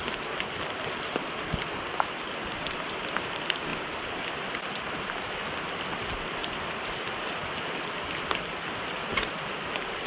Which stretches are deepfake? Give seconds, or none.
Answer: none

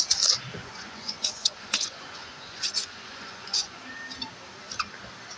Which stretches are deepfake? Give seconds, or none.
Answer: 0.6-3.8

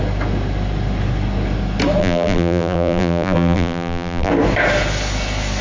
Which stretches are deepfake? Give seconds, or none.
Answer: 2.0-4.3

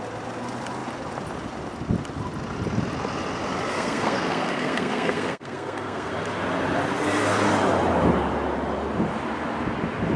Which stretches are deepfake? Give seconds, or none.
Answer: 3.7-6.1